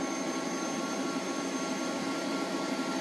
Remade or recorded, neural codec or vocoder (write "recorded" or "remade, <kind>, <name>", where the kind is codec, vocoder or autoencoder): remade, vocoder, BigVGAN v2